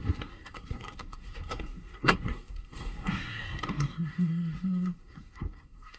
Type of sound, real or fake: fake